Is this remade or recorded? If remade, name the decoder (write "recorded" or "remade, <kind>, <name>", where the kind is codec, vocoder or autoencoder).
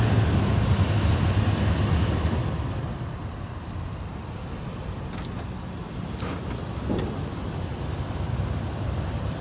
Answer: recorded